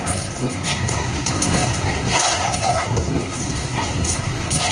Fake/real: fake